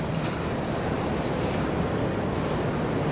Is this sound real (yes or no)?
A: yes